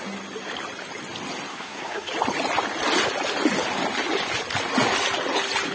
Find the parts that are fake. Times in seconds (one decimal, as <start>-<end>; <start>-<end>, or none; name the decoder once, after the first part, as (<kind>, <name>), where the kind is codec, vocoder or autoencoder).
1.5-2.1 (codec, SNAC)

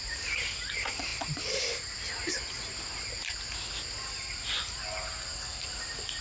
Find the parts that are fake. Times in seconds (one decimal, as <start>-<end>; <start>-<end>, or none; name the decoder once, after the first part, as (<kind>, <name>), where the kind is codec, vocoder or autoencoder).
none